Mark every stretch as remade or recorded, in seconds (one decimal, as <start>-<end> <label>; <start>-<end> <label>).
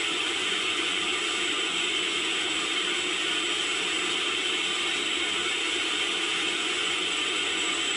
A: 0.0-1.0 remade; 1.0-1.5 recorded; 1.5-2.5 remade; 2.5-5.9 recorded; 5.9-8.0 remade